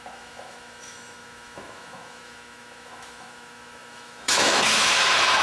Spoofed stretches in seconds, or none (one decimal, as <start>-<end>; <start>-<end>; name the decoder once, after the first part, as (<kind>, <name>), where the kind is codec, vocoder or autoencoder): 0.0-5.4 (autoencoder, DAC-VAE)